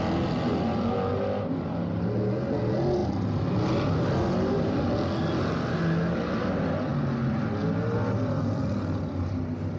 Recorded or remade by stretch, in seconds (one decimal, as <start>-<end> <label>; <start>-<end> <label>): 0.0-9.8 recorded

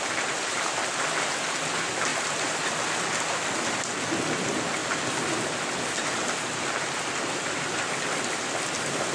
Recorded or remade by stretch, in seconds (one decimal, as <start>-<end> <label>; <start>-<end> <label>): 0.0-2.1 recorded; 2.1-2.6 remade; 2.6-9.1 recorded

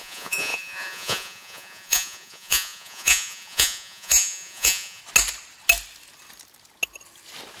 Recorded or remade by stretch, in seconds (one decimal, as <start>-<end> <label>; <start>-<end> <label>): 0.0-5.0 remade; 5.0-7.6 recorded

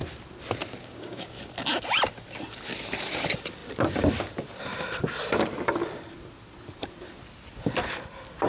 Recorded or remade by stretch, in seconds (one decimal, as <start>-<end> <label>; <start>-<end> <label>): 0.0-0.8 recorded; 0.8-1.4 remade; 1.4-8.5 recorded

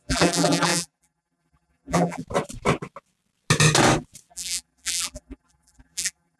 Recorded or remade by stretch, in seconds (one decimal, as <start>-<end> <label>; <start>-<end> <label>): 0.0-2.2 remade; 2.2-4.3 recorded; 4.3-6.4 remade